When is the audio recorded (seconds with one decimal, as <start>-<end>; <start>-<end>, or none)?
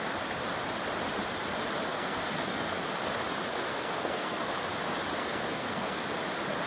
0.0-1.9; 2.8-3.7; 4.5-5.2; 6.0-6.7